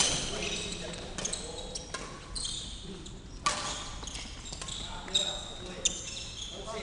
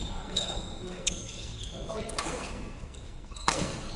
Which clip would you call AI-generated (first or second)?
second